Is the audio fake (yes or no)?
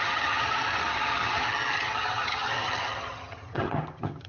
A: yes